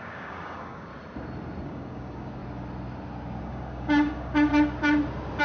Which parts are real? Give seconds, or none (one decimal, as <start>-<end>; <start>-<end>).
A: 0.9-1.6; 2.4-3.4; 4.5-5.4